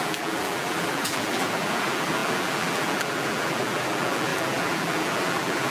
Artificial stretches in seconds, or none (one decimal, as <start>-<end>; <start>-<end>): 0.0-5.7